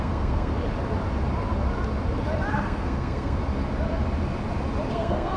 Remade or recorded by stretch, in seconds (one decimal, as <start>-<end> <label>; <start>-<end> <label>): 0.0-0.5 remade; 0.5-2.5 recorded; 2.5-3.4 remade; 3.4-4.9 recorded; 4.9-5.4 remade